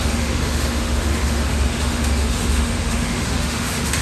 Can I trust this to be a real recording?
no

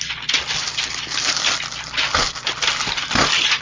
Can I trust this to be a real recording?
yes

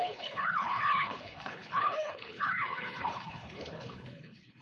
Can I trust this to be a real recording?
no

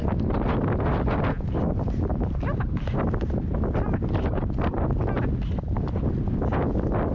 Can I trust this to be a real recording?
yes